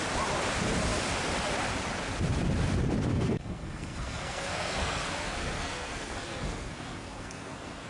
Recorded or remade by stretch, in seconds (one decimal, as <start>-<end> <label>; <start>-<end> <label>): 0.0-3.1 recorded; 3.1-7.9 remade